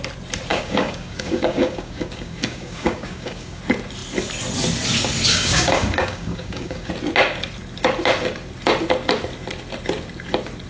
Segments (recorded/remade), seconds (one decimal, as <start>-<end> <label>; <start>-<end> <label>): 0.0-0.5 recorded; 0.5-3.6 remade; 3.6-5.3 recorded; 5.3-6.9 remade; 6.9-10.7 recorded